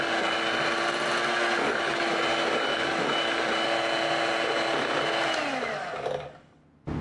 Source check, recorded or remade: recorded